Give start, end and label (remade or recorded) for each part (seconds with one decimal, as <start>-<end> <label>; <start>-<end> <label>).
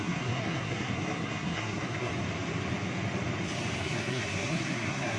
0.0-2.1 remade; 2.1-3.8 recorded; 3.8-5.2 remade